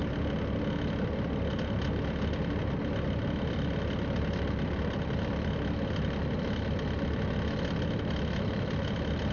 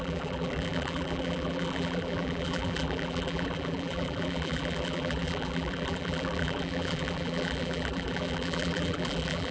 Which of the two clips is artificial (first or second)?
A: second